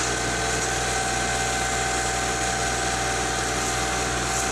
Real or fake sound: real